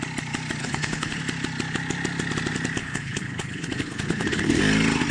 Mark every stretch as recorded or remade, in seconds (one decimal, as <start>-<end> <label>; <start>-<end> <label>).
0.0-0.6 recorded; 0.6-1.2 remade; 1.2-2.8 recorded; 2.8-4.6 remade; 4.6-5.1 recorded